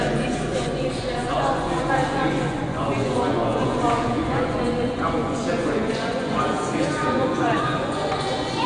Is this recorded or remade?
remade